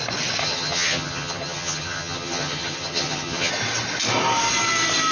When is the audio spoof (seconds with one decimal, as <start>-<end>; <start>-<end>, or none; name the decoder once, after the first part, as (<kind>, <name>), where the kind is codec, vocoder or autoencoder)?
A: 0.4-3.5 (vocoder, HiFi-GAN)